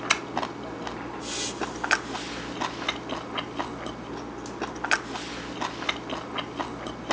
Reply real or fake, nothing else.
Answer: real